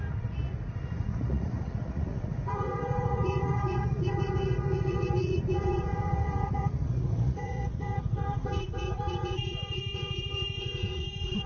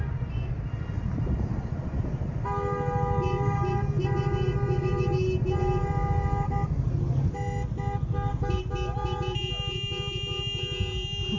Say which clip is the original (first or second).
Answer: second